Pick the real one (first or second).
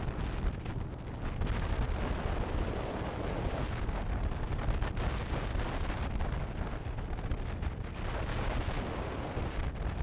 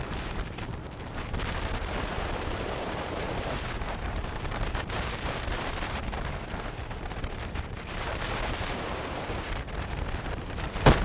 first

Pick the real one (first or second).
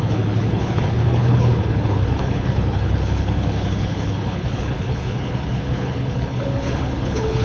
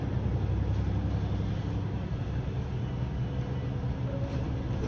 second